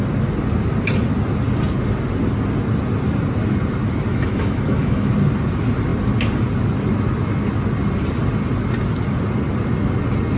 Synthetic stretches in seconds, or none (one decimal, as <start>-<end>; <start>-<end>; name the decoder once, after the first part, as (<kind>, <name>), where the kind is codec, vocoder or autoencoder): 4.1-5.1 (autoencoder, DAC-VAE)

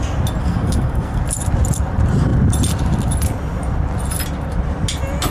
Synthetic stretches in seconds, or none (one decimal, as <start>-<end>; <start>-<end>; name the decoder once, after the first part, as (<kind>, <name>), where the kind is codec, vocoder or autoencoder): 0.4-1.2 (codec, SNAC)

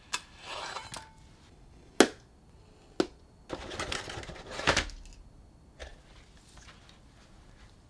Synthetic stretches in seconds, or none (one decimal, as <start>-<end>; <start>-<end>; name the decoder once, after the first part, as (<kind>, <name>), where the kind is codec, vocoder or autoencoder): none

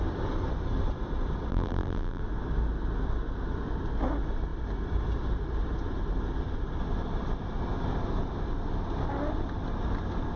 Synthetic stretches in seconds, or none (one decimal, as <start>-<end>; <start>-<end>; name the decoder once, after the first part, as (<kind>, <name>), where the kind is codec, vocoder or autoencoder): 1.5-2.2 (vocoder, BigVGAN v2)

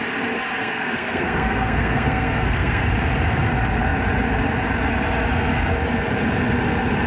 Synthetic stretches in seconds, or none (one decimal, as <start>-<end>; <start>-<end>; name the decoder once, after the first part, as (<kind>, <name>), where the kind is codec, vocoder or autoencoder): 0.6-2.8 (codec, SNAC)